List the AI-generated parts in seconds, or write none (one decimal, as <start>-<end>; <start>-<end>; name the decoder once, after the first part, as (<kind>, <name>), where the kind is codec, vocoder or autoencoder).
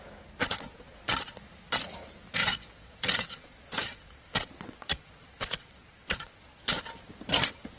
0.4-1.1 (vocoder, Vocos); 2.4-6.8